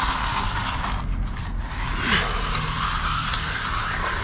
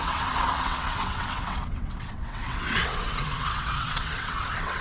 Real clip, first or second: first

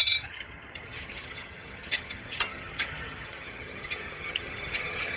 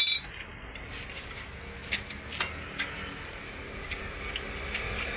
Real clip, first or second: second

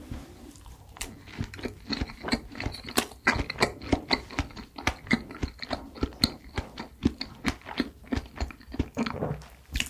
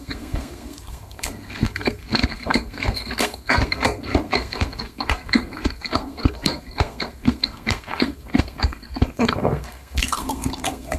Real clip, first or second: first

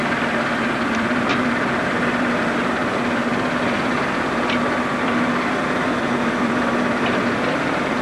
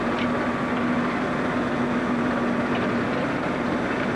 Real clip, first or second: second